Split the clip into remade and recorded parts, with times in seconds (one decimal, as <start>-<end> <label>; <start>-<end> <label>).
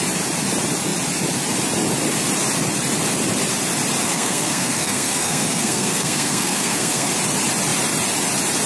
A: 0.0-4.0 recorded; 4.0-7.1 remade; 7.1-8.7 recorded